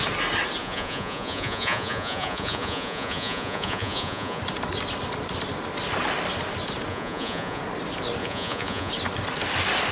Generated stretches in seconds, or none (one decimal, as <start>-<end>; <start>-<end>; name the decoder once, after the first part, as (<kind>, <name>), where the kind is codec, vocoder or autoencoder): 0.6-4.4 (vocoder, Vocos); 6.9-7.6; 8.2-8.9